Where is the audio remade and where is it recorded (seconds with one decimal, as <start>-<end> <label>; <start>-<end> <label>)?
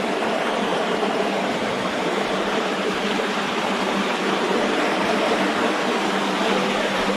0.0-0.7 recorded; 0.7-5.0 remade; 5.0-7.2 recorded